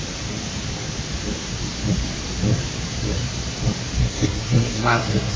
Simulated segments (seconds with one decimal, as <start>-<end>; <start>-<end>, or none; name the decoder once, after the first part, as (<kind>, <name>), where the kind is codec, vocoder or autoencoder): 4.0-5.4 (codec, SNAC)